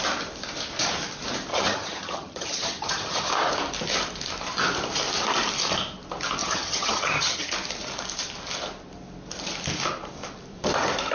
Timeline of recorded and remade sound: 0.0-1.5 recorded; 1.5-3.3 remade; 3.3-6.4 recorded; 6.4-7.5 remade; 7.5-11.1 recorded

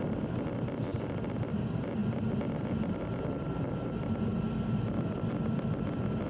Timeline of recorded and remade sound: 0.0-6.3 recorded